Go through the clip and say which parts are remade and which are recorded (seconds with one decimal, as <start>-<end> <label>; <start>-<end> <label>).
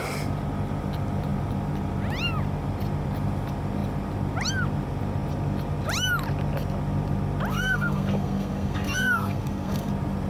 0.0-7.5 recorded; 7.5-9.9 remade; 9.9-10.3 recorded